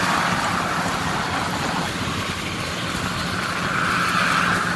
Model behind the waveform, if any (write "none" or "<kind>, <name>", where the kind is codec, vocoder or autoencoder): none